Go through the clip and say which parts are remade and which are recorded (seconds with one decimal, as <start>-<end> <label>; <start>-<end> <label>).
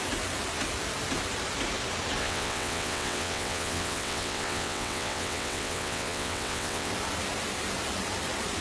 0.0-2.2 recorded; 2.2-6.9 remade; 6.9-8.6 recorded